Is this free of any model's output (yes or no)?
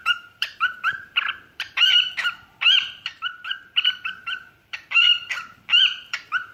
no